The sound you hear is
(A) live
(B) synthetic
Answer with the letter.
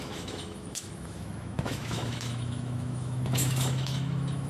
B